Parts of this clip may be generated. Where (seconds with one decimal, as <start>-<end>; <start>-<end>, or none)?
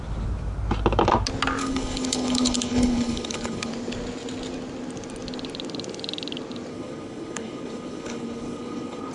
1.6-3.7; 6.7-9.1